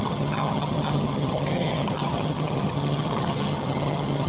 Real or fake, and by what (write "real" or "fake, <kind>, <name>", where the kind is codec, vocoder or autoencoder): fake, vocoder, HiFi-GAN